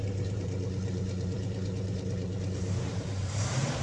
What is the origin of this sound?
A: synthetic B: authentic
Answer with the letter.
A